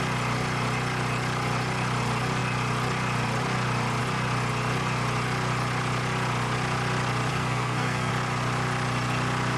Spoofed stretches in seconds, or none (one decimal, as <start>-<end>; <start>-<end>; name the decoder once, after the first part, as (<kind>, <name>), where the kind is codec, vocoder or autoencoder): 7.3-8.1 (codec, SNAC)